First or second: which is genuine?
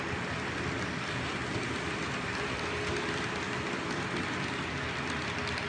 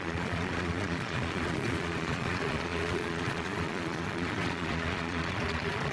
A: first